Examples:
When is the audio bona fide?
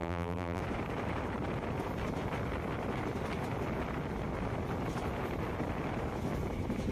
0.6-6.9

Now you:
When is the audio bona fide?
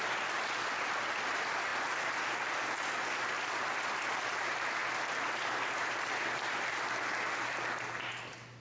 1.7-3.1; 4.8-8.6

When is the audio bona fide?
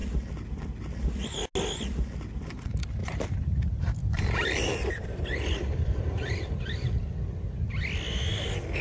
0.0-3.0; 6.4-8.8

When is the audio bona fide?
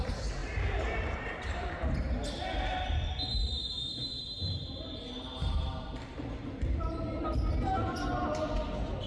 0.0-0.4; 1.7-3.9; 7.0-9.1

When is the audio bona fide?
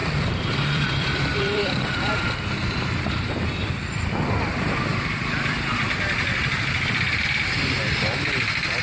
3.0-3.6; 4.1-4.9; 7.2-8.8